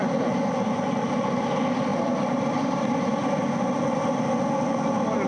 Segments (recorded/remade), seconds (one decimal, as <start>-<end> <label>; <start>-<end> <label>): 0.0-1.9 recorded; 1.9-3.6 remade; 3.6-5.3 recorded

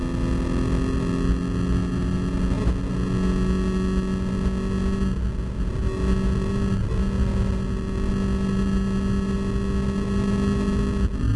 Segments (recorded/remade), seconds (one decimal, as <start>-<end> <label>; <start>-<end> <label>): 0.0-11.4 recorded

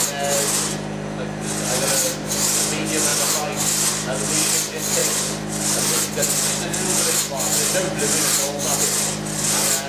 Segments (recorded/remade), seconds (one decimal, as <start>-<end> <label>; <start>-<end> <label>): 0.0-5.0 recorded; 5.0-6.1 remade; 6.1-9.9 recorded